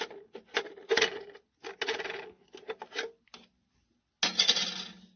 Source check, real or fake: real